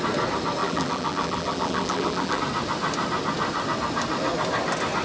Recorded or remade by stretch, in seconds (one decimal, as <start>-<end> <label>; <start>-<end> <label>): 0.0-0.6 recorded; 0.6-2.4 remade; 2.4-5.0 recorded